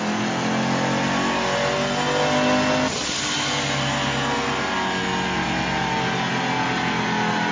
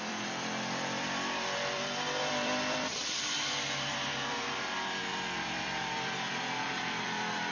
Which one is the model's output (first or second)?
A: second